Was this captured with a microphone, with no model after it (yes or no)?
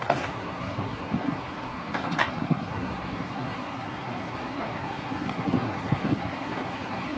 no